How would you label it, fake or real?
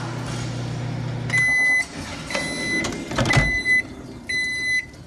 real